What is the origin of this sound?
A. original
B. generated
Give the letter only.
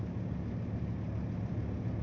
A